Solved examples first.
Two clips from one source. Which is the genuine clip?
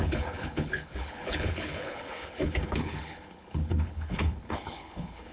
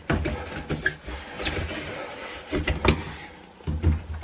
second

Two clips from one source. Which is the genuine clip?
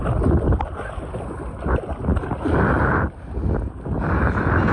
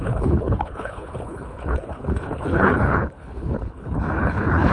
first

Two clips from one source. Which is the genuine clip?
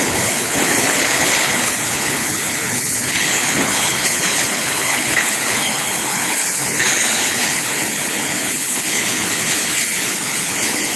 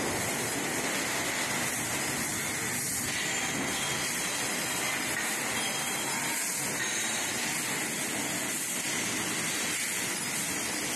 second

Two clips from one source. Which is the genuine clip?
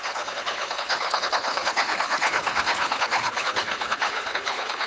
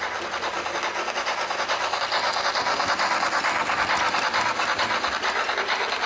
second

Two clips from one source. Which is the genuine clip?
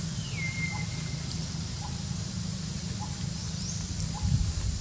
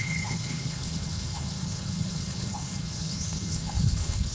first